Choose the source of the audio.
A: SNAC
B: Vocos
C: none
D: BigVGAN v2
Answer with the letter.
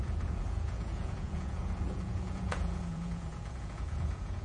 B